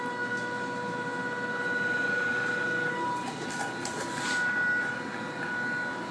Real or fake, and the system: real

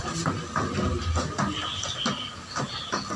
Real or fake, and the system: real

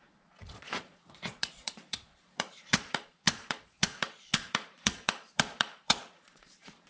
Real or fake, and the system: fake, vocoder, Vocos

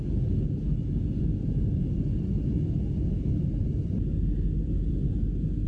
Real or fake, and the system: real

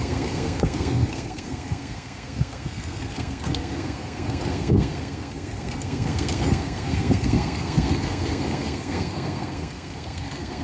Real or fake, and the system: fake, codec, SNAC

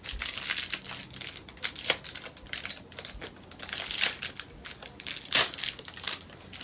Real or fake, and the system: real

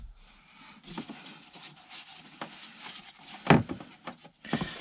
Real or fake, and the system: real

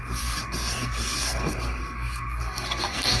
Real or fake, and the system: fake, codec, SNAC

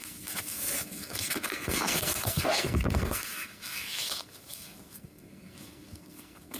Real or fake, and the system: fake, codec, SNAC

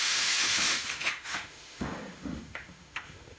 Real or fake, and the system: fake, autoencoder, DAC-VAE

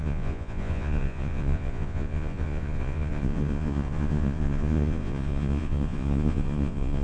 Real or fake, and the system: fake, vocoder, Vocos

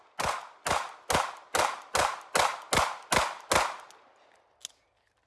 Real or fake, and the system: real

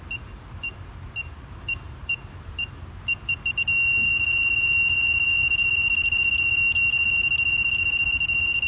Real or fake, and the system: fake, vocoder, BigVGAN v2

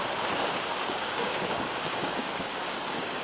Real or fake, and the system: fake, codec, DAC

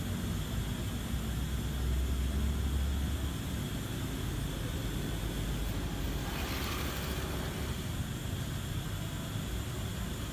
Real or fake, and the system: real